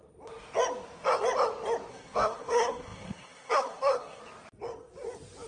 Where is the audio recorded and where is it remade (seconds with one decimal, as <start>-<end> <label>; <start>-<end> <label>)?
0.0-1.9 recorded; 1.9-4.2 remade; 4.2-5.5 recorded